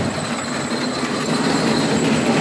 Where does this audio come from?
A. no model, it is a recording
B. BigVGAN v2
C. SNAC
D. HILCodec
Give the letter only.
A